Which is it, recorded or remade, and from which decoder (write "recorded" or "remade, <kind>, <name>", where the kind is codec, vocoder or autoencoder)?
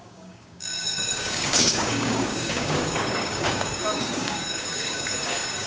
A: remade, codec, DAC